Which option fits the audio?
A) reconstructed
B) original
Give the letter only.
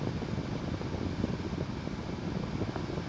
B